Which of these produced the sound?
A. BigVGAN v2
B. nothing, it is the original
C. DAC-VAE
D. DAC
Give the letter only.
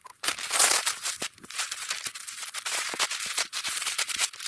A